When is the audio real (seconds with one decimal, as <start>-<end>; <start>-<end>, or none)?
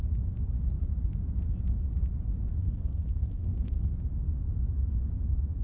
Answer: 0.0-2.6; 3.9-5.6